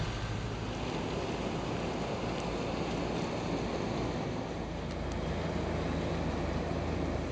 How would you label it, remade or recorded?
recorded